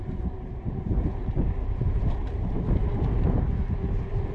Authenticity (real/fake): fake